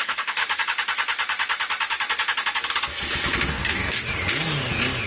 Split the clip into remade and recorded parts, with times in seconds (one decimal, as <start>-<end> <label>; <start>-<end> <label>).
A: 0.0-0.4 remade; 0.4-3.5 recorded; 3.5-4.0 remade; 4.0-5.1 recorded